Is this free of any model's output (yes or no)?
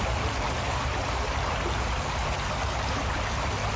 yes